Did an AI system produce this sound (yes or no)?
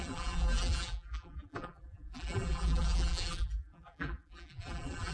yes